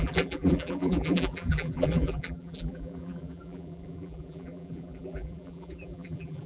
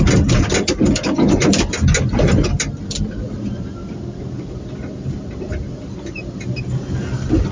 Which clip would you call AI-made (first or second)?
first